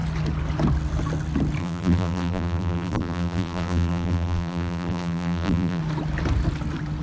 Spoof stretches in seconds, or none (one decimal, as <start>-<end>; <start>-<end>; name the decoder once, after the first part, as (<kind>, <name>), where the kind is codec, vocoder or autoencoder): 1.6-5.8 (vocoder, BigVGAN v2)